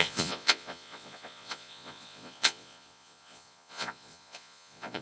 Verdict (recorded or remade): remade